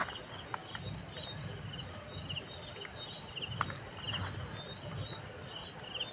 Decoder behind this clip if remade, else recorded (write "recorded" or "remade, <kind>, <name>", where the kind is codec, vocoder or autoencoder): recorded